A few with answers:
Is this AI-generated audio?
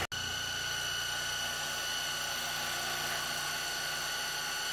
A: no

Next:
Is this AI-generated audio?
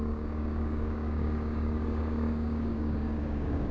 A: yes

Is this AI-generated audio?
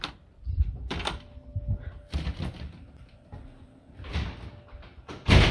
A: no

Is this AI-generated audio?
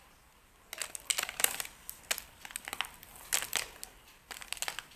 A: no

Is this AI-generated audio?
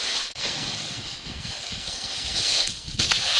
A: yes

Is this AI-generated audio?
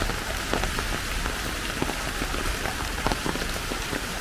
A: no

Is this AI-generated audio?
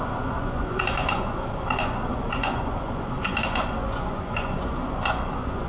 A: yes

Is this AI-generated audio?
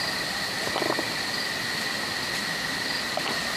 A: no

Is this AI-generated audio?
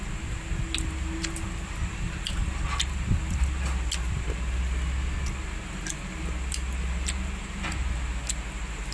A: no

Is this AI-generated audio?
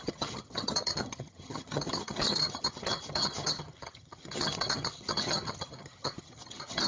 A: yes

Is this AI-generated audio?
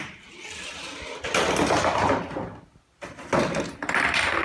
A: no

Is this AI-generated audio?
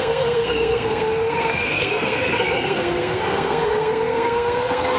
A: yes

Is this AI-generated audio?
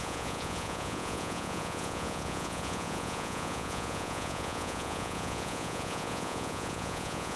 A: yes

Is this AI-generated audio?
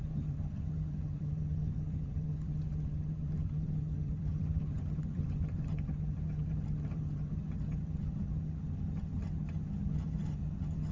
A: yes